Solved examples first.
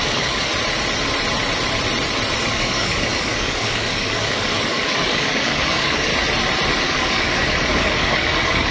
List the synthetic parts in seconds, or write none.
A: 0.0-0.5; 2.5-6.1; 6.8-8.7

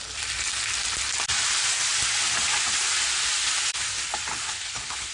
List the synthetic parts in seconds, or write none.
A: 4.3-5.1

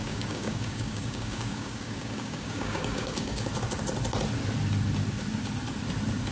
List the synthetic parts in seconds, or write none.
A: 0.0-3.5

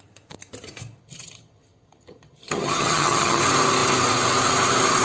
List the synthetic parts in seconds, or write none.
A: 1.0-3.4

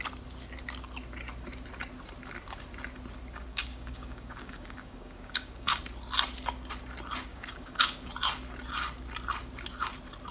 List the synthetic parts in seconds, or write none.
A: 3.5-5.8; 7.3-8.1

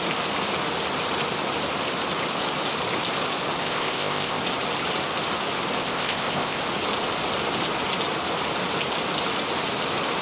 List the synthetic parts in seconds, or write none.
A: 3.6-4.4; 5.8-6.6

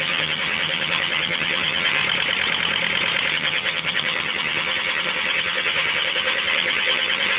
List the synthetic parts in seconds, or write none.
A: 0.0-2.0; 3.3-7.4

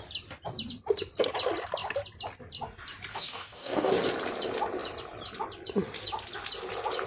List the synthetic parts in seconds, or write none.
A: 3.1-3.9